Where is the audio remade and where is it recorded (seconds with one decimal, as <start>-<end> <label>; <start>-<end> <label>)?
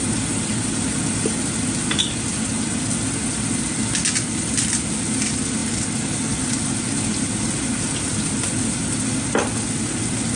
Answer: 0.0-10.4 recorded